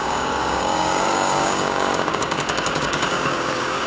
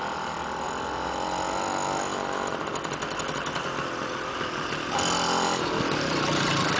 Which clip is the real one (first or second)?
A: second